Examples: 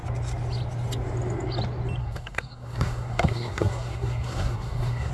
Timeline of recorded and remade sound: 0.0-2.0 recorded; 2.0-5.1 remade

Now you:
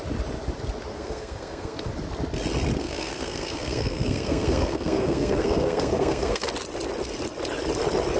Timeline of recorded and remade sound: 0.0-0.9 recorded; 0.9-1.9 remade; 1.9-2.8 recorded; 2.8-6.5 remade; 6.5-8.2 recorded

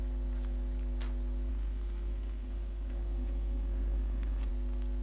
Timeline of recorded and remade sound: 0.0-1.5 recorded; 1.5-4.5 remade; 4.5-5.0 recorded

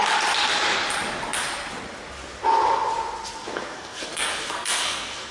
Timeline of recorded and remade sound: 0.0-3.2 recorded; 3.2-5.3 remade

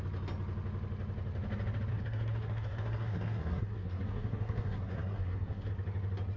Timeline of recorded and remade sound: 0.0-1.9 recorded; 1.9-5.7 remade; 5.7-6.4 recorded

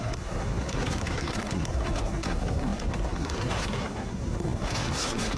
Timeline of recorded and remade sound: 0.0-5.4 remade

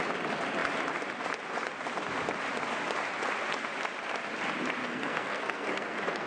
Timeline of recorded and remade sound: 0.0-4.8 recorded; 4.8-6.3 remade

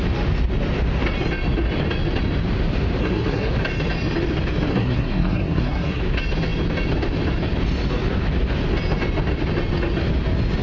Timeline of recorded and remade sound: 0.0-3.0 recorded; 3.0-3.5 remade; 3.5-4.7 recorded; 4.7-6.0 remade; 6.0-10.6 recorded